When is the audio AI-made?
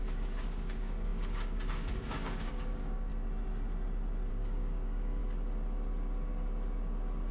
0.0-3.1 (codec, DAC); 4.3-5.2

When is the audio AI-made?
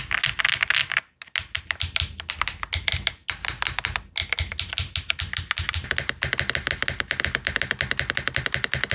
none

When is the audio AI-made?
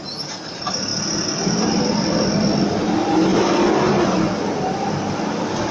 none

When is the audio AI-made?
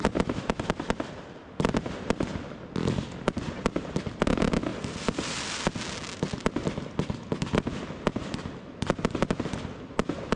none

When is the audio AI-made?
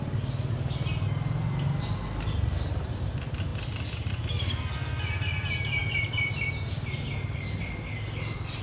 none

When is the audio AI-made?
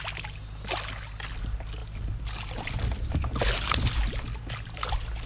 none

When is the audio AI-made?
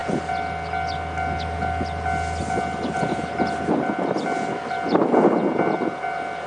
none